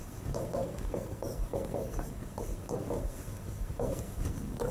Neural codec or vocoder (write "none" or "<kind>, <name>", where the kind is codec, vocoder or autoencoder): codec, SNAC